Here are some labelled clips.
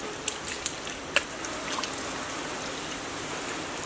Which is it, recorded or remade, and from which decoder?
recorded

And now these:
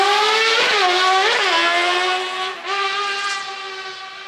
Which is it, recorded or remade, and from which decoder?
recorded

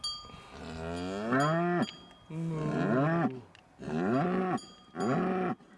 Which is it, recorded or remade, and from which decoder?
recorded